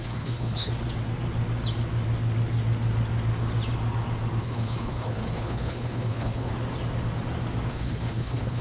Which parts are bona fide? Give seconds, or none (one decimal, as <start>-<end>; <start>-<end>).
0.7-4.4; 6.5-7.7